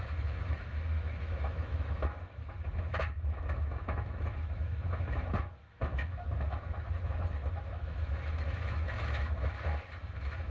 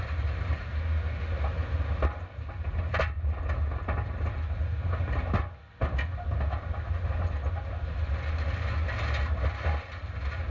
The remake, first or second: first